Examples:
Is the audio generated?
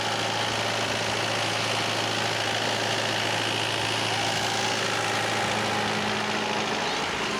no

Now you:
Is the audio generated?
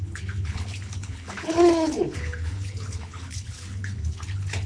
yes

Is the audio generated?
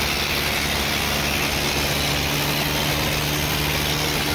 no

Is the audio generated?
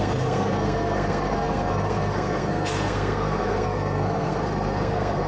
yes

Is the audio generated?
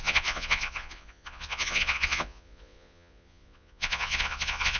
yes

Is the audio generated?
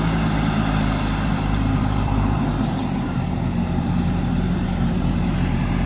yes